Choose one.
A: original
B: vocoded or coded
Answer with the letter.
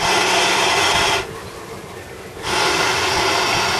A